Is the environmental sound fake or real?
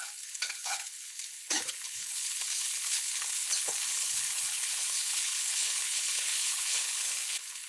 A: fake